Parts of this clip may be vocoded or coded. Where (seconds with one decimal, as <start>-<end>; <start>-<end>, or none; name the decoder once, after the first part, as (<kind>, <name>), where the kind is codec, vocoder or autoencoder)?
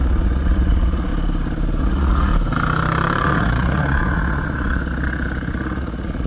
0.0-1.1 (vocoder, Vocos); 1.8-2.3; 3.2-6.3